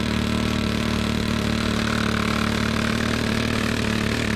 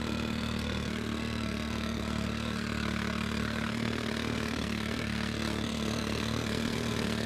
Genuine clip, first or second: first